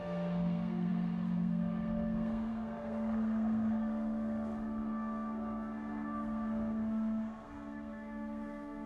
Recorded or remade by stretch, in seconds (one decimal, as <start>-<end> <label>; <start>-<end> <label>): 0.0-8.9 remade